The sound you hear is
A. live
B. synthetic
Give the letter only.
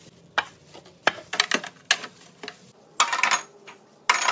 A